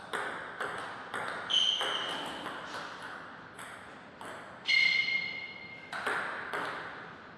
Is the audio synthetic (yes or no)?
no